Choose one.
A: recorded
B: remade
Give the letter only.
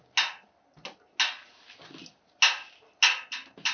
A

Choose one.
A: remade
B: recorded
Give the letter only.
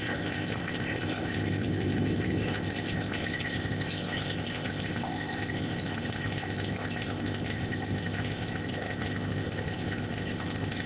A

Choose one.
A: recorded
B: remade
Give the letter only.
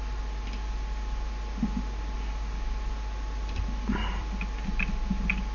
A